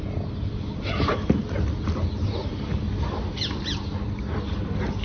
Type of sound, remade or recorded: recorded